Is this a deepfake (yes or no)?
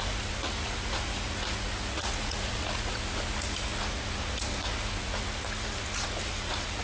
yes